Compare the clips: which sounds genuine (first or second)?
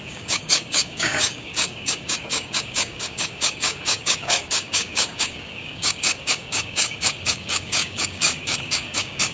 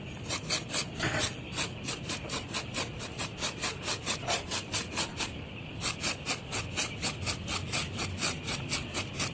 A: second